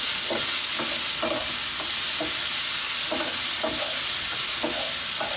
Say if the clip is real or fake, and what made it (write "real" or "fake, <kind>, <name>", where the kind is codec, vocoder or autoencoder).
real